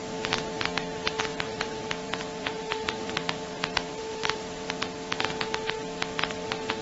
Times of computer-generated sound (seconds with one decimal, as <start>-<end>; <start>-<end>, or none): 1.3-4.7